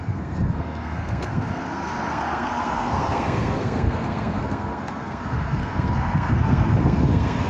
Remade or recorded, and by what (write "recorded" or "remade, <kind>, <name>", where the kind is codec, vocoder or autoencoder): remade, codec, SNAC